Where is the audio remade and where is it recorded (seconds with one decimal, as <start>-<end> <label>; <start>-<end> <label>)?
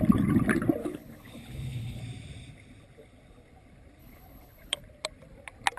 0.0-0.8 recorded; 0.8-2.0 remade; 2.0-4.0 recorded; 4.0-4.8 remade; 4.8-5.8 recorded